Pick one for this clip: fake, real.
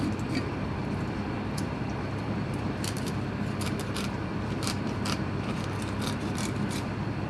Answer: fake